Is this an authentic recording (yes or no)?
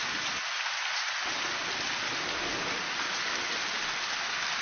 yes